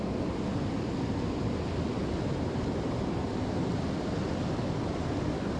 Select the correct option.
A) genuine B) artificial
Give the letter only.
A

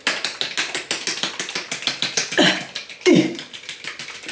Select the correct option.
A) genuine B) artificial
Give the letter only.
A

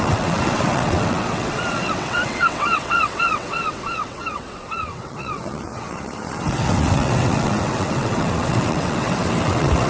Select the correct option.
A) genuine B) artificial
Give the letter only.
B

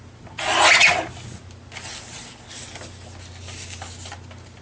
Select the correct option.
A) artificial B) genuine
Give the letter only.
B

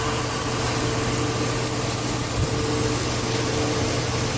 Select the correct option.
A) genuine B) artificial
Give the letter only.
A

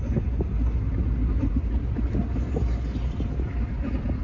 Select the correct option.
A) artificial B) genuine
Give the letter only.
B